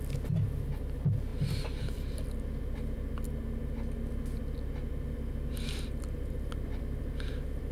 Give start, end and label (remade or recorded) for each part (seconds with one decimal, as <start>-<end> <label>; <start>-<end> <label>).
0.0-7.7 recorded